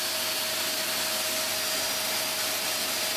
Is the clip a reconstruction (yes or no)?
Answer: no